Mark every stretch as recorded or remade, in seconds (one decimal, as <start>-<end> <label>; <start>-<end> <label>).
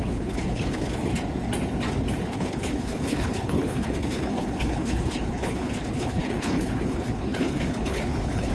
0.0-1.1 remade; 1.1-2.2 recorded; 2.2-8.5 remade